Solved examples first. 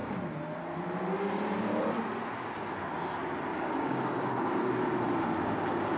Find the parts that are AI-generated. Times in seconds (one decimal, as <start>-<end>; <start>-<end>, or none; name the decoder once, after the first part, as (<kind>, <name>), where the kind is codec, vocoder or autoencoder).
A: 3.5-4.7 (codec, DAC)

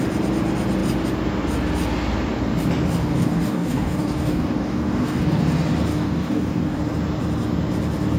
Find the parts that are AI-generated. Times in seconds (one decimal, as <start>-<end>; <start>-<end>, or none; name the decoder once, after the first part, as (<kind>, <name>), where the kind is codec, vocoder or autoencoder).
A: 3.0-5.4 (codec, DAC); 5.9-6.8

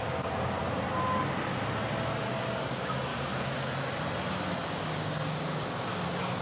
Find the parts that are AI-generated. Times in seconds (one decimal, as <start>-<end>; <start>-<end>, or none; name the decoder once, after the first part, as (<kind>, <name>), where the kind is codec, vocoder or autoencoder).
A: 0.0-0.6 (codec, DAC); 2.3-3.1; 4.7-6.4

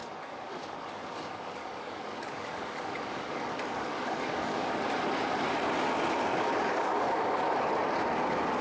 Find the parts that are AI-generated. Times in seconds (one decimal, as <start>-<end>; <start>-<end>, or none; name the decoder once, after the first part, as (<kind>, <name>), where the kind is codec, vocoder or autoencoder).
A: 0.0-4.9 (codec, DAC); 6.3-7.7

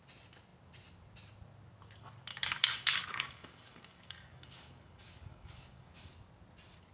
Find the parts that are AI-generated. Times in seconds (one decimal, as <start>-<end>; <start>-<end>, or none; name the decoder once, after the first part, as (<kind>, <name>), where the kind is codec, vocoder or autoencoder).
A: 2.3-6.1 (codec, DAC)

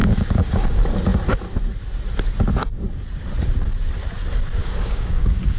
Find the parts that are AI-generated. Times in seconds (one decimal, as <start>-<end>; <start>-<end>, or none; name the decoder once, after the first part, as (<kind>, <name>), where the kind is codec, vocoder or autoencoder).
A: 0.0-0.7 (codec, DAC); 4.6-5.6

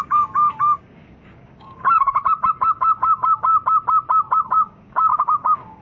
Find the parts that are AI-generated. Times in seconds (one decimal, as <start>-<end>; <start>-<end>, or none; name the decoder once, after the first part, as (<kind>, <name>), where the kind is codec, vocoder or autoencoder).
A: 0.0-3.5 (codec, DAC); 4.4-5.8